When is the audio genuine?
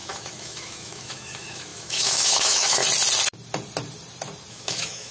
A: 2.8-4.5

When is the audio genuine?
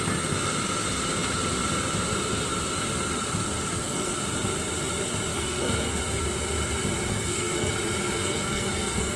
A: 0.0-3.7; 4.2-5.3; 6.0-7.1; 7.7-8.2